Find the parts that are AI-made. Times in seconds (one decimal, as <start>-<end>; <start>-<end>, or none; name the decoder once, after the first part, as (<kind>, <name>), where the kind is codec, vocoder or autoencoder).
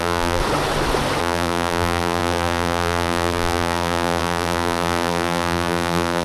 0.0-0.4 (vocoder, BigVGAN v2); 1.2-6.2